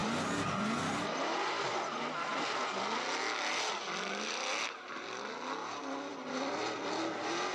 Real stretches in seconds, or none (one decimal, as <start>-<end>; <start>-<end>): 0.0-7.5